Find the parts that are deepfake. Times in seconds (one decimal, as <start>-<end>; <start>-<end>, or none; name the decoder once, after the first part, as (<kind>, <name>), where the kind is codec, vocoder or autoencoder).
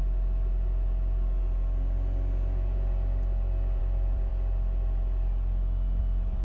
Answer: 3.8-4.3 (vocoder, BigVGAN v2); 6.0-6.4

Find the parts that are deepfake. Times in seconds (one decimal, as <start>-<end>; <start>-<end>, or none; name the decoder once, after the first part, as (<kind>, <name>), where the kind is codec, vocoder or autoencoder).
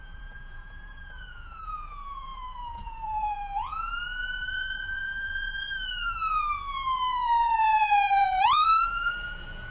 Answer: 0.0-9.7 (vocoder, Vocos)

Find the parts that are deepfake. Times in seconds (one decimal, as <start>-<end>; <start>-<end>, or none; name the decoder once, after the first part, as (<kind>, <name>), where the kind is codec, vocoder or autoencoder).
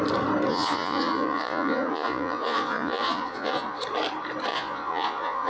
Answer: 0.5-3.8 (vocoder, Vocos); 4.5-5.5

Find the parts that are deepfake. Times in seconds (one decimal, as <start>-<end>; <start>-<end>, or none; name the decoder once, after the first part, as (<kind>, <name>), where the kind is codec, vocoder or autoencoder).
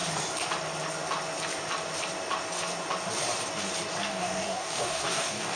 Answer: 4.0-5.6 (codec, DAC)